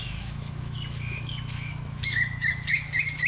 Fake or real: fake